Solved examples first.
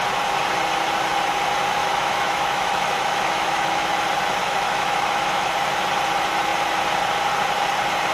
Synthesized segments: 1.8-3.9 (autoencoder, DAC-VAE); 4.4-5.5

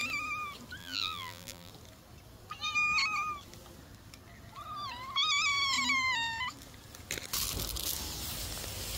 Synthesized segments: 0.8-1.7 (vocoder, BigVGAN v2)

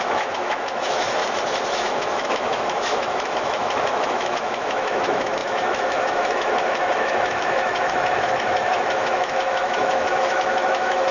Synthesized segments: 0.0-1.2 (autoencoder, DAC-VAE); 1.7-11.1

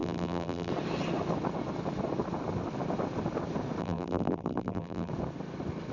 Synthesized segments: 0.0-0.7 (vocoder, BigVGAN v2); 3.8-5.1